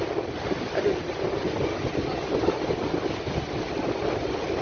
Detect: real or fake real